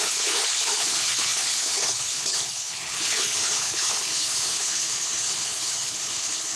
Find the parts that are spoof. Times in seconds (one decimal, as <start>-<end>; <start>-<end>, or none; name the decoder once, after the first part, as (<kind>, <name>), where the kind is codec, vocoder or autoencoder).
0.0-6.6 (codec, HILCodec)